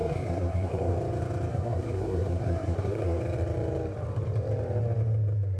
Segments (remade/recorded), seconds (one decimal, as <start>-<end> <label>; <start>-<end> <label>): 0.0-0.9 remade; 0.9-1.5 recorded; 1.5-3.2 remade; 3.2-5.6 recorded

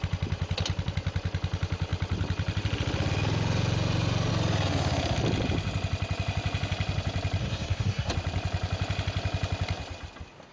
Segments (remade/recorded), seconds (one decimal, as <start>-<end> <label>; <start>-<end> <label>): 0.0-7.4 recorded; 7.4-8.1 remade; 8.1-10.5 recorded

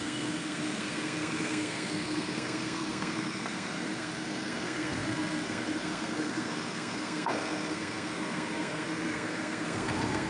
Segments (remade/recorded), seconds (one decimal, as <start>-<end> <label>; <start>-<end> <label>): 0.0-10.3 remade

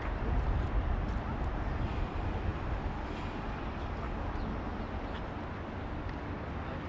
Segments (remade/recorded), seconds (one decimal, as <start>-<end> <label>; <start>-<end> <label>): 0.0-6.9 recorded